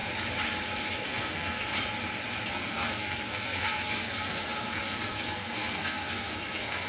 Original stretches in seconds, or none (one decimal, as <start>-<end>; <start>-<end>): 0.0-0.9; 1.7-2.5